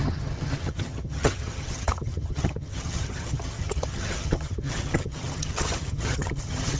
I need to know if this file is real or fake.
fake